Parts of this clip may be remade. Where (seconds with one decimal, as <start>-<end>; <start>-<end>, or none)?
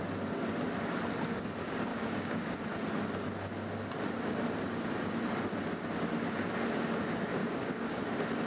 1.9-2.5; 7.4-8.0